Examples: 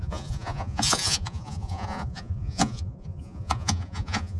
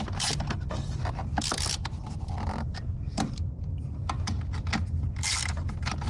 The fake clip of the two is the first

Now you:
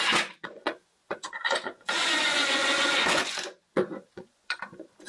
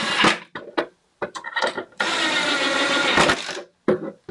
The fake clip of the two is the first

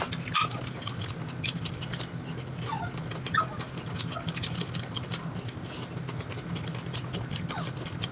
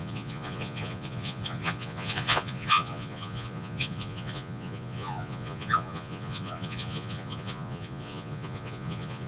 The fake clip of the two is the second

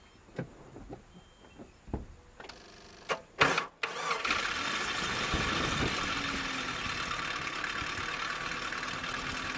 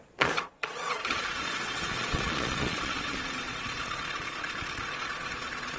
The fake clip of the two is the second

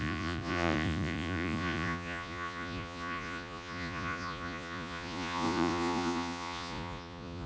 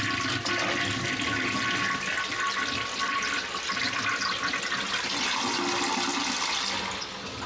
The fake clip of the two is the first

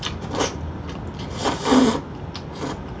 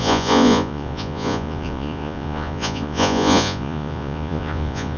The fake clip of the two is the second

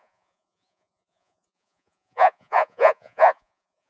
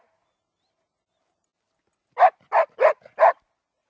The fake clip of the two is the first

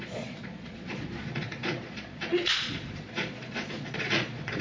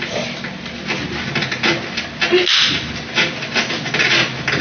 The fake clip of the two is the first